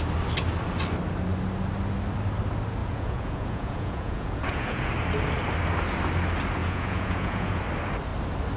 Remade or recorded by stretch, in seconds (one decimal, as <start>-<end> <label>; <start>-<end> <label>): 0.0-2.8 recorded; 2.8-4.9 remade; 4.9-6.6 recorded; 6.6-7.6 remade; 7.6-8.6 recorded